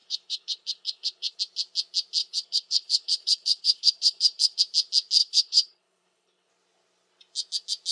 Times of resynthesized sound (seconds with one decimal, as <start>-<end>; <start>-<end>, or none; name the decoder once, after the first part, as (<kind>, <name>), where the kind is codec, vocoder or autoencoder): 0.0-1.4 (codec, HILCodec); 2.2-4.6; 5.2-6.5